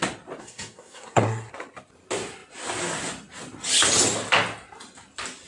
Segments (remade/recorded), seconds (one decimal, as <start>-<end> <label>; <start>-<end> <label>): 0.0-0.4 recorded; 0.4-1.5 remade; 1.5-5.5 recorded